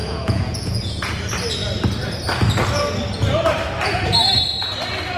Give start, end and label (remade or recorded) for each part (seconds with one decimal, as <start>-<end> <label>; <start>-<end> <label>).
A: 0.0-1.1 remade; 1.1-5.2 recorded